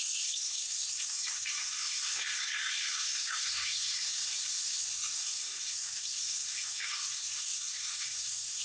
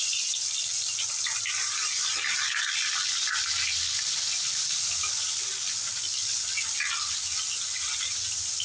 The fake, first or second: first